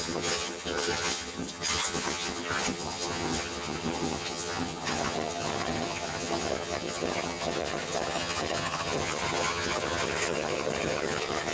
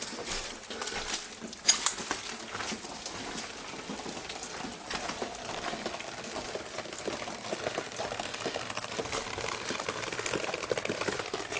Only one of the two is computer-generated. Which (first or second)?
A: first